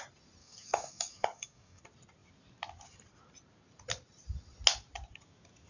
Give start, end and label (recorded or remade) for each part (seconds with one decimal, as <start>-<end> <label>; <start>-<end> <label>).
0.0-0.4 recorded; 0.4-1.8 remade; 1.8-5.7 recorded